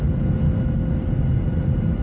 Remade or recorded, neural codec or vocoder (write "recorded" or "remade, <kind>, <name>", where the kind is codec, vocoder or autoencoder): recorded